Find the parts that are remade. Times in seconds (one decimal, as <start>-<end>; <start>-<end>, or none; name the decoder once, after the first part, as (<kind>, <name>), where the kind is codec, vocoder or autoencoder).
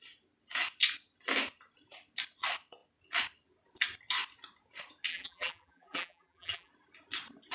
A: 5.1-6.7 (vocoder, BigVGAN v2)